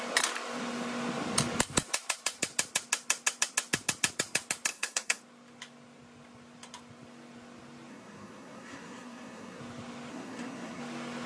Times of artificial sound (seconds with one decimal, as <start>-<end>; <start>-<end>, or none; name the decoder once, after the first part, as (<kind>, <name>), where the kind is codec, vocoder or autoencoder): 4.7-5.2 (codec, SNAC); 7.9-9.6; 10.1-10.8